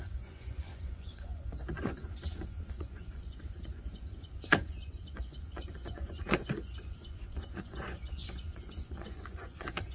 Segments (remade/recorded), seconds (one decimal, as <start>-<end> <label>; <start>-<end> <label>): 0.0-9.9 remade